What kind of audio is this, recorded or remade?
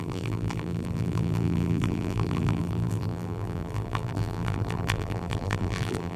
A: remade